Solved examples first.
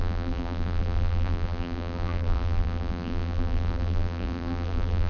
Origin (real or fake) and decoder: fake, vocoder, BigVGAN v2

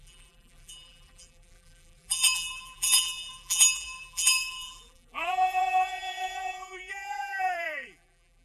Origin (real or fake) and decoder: fake, vocoder, BigVGAN v2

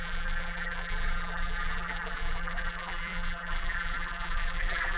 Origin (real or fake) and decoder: fake, vocoder, BigVGAN v2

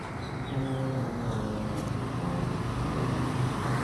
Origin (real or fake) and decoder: real